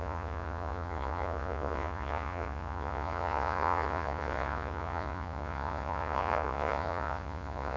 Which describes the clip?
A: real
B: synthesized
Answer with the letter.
B